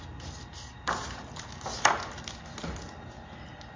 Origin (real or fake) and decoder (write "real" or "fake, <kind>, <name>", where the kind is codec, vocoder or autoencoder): real